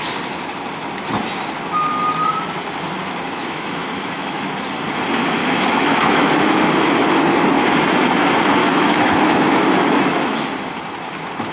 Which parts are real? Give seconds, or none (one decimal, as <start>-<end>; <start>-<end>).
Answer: 0.0-3.4; 4.5-5.4; 6.6-8.6; 10.4-11.5